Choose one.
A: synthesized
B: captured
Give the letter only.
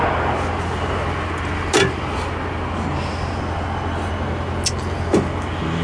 B